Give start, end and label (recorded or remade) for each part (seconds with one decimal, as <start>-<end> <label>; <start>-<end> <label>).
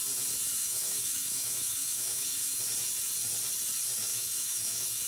0.0-0.6 recorded; 0.6-2.6 remade; 2.6-4.1 recorded; 4.1-5.1 remade